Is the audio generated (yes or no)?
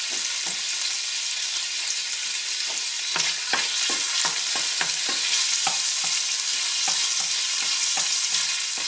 no